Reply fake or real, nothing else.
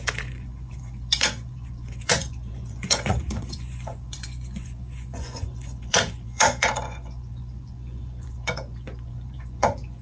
fake